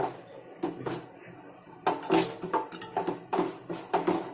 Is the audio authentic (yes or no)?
yes